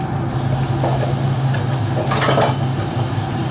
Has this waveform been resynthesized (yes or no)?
no